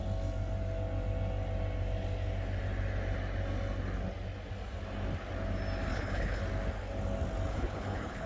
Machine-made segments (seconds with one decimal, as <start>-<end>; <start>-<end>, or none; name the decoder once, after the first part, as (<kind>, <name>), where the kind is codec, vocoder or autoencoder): 5.9-6.4 (codec, HILCodec); 7.5-8.3